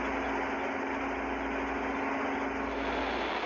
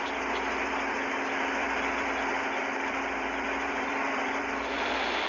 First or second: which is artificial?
second